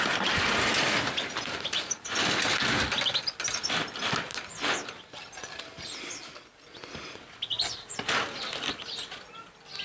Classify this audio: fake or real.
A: real